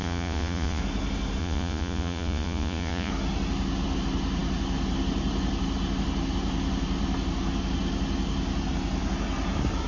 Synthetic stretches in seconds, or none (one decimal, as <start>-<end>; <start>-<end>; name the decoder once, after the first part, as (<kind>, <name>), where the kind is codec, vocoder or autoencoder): 0.0-0.8 (vocoder, Vocos); 1.4-3.1